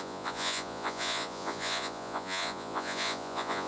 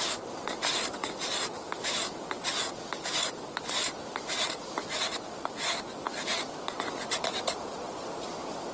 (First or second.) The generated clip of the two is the first